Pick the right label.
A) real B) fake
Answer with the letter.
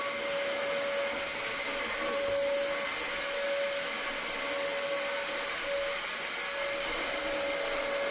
A